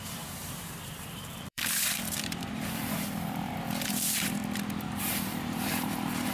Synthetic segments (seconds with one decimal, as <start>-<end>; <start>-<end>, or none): 0.0-4.4; 5.0-6.3